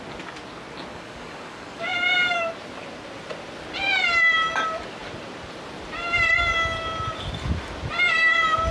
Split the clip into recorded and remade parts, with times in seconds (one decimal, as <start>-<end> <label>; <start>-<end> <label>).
0.0-0.9 recorded; 0.9-2.4 remade; 2.4-8.7 recorded